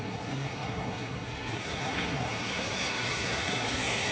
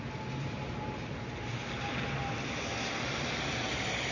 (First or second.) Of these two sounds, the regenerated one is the first